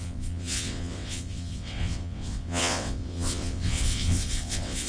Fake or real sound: fake